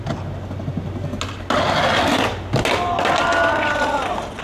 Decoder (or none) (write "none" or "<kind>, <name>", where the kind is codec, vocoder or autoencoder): none